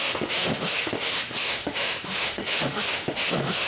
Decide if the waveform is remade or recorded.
remade